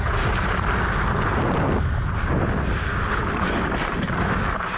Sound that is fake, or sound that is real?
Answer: real